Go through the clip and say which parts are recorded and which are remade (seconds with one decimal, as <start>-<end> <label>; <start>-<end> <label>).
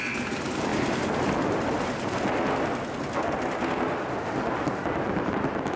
0.0-5.8 recorded